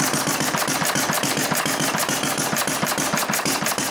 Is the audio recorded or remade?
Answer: remade